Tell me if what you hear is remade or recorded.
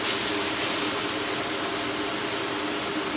recorded